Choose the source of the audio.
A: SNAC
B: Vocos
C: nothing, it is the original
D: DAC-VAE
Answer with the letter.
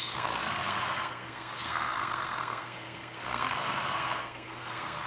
A